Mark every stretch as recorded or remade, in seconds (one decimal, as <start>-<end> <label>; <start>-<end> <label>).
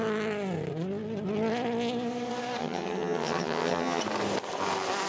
0.0-2.6 recorded; 2.6-4.0 remade; 4.0-5.1 recorded